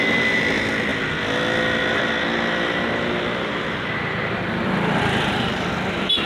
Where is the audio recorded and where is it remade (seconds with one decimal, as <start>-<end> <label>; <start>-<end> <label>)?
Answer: 0.0-6.3 recorded